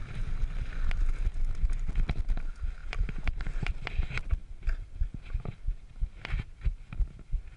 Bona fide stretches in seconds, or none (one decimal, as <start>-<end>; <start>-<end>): 0.0-2.8; 3.7-7.6